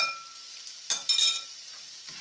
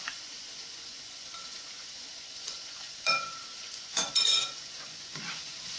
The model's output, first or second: second